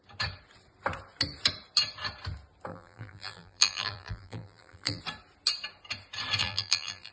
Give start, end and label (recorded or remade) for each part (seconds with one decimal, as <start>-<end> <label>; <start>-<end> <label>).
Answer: 0.0-2.7 recorded; 2.7-5.0 remade; 5.0-6.4 recorded; 6.4-7.1 remade

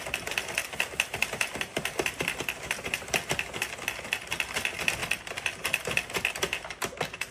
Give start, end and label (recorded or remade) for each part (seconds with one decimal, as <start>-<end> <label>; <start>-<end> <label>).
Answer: 0.0-7.3 recorded

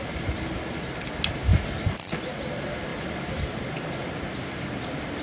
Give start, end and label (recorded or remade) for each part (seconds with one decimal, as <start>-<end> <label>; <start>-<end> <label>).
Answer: 0.0-5.2 recorded

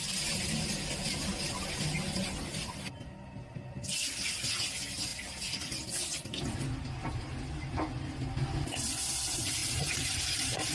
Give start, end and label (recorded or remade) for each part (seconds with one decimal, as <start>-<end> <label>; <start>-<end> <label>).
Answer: 0.0-9.6 recorded; 9.6-10.7 remade

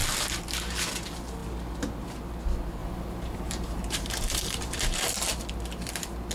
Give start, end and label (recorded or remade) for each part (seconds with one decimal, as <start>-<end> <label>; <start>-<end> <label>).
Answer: 0.0-2.8 recorded; 2.8-4.8 remade; 4.8-6.3 recorded

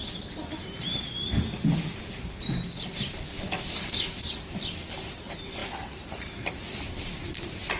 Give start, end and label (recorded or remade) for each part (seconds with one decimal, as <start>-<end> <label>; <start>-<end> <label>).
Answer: 0.0-5.6 remade; 5.6-6.5 recorded; 6.5-7.8 remade

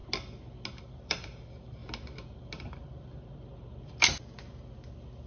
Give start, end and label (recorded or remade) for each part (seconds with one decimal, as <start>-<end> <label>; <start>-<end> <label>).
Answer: 0.0-0.8 recorded; 0.8-1.8 remade; 1.8-5.3 recorded

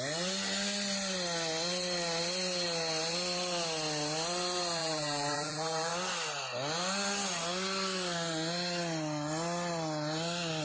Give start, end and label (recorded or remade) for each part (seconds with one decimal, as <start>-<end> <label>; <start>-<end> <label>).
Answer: 0.0-4.8 recorded; 4.8-5.9 remade; 5.9-10.6 recorded